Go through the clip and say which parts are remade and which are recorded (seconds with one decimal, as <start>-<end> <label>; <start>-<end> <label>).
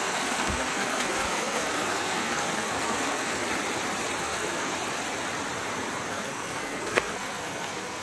0.0-3.4 remade; 3.4-4.2 recorded; 4.2-4.7 remade; 4.7-6.1 recorded; 6.1-8.0 remade